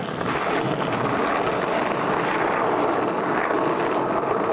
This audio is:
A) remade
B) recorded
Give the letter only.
B